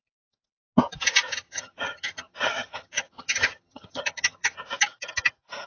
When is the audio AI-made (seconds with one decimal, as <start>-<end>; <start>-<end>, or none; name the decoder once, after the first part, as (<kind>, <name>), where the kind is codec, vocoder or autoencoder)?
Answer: 1.3-4.7 (vocoder, HiFi-GAN)